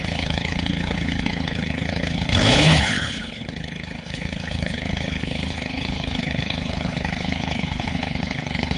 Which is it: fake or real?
fake